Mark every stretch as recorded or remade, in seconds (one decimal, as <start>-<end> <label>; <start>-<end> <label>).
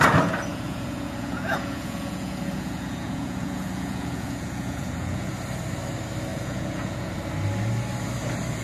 0.0-0.5 recorded; 0.5-5.3 remade; 5.3-6.3 recorded; 6.3-7.1 remade; 7.1-8.6 recorded